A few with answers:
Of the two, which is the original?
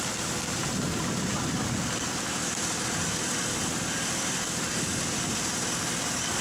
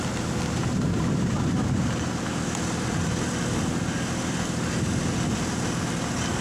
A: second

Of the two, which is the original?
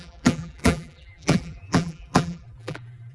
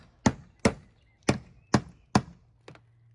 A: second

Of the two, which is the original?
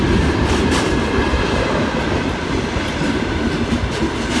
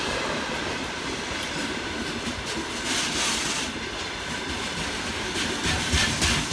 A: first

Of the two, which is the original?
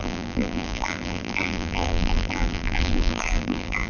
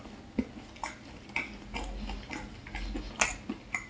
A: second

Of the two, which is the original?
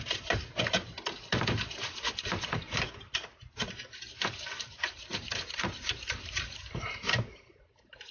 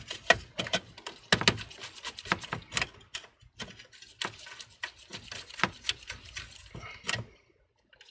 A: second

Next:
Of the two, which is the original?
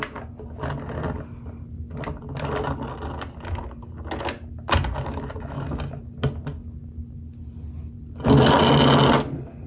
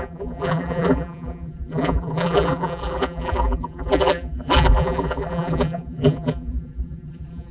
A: first